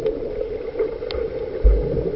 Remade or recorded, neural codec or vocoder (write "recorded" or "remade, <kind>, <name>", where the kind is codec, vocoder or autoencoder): recorded